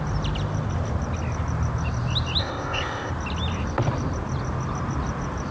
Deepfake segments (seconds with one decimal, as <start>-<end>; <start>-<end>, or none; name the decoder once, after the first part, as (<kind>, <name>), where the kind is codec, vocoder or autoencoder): 2.4-3.1 (codec, ZipCodec)